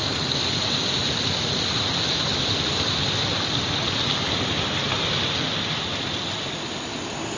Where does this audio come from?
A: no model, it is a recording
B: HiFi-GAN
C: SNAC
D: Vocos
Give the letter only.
A